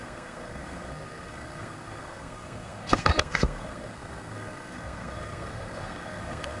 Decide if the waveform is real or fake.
fake